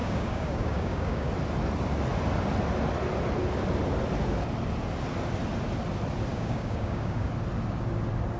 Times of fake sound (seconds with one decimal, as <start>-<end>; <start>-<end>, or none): 0.0-1.3; 6.3-7.3